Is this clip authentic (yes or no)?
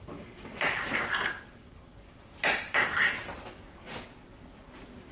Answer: yes